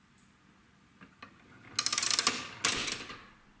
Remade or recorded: recorded